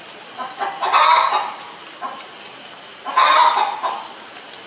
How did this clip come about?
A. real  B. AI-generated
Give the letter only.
A